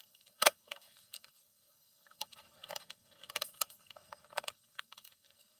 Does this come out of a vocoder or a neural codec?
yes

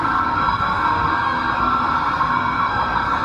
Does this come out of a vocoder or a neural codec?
yes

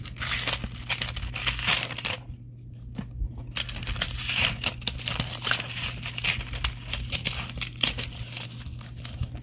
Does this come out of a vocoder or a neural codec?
no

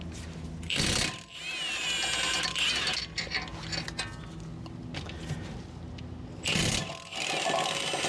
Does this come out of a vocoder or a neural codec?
no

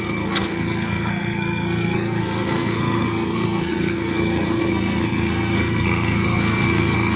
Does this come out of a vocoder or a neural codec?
yes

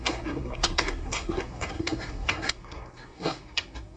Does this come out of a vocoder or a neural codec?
yes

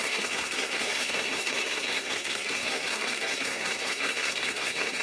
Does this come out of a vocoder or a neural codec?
yes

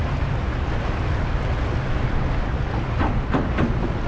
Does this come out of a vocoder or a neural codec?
no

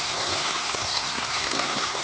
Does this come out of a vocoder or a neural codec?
yes